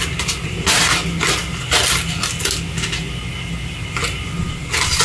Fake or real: real